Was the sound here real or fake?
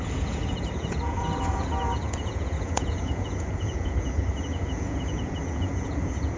fake